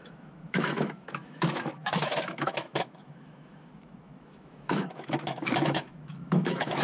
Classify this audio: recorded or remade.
remade